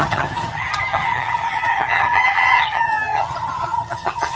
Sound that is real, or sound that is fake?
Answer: fake